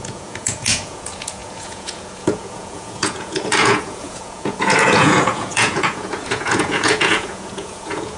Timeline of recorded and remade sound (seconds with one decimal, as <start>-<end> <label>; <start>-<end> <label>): 0.0-8.2 remade